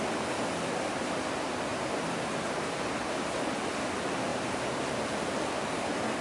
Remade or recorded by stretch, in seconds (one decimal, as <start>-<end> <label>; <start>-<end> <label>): 0.0-1.7 recorded; 1.7-3.6 remade; 3.6-4.3 recorded; 4.3-4.8 remade; 4.8-6.2 recorded